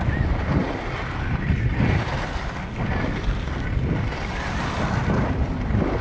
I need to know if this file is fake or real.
real